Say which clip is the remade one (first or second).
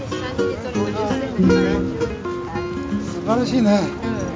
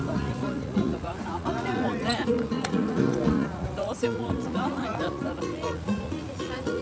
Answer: second